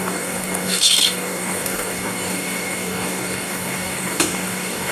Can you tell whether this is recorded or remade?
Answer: remade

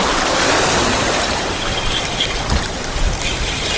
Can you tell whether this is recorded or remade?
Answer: recorded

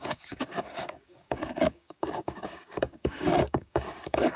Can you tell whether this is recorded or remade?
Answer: remade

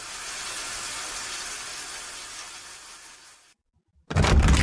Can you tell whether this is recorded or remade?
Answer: recorded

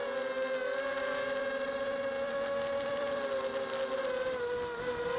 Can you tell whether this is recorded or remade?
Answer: recorded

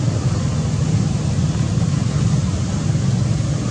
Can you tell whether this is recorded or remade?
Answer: recorded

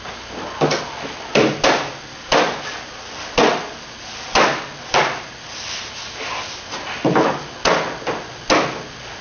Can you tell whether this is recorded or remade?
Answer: recorded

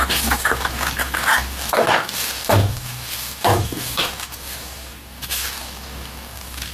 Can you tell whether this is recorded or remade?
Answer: remade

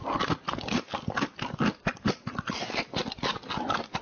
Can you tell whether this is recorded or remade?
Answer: recorded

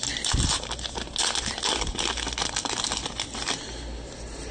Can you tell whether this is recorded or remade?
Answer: recorded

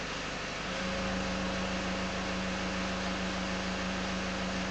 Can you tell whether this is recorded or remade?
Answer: recorded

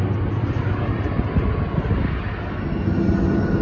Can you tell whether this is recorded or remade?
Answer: recorded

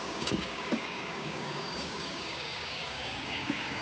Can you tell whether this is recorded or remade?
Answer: remade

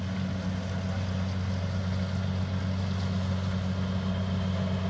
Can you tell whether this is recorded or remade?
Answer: recorded